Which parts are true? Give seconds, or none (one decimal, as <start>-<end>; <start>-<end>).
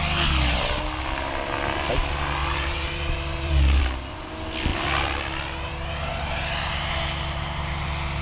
0.0-2.4; 3.8-8.2